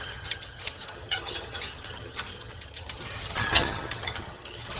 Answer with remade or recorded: remade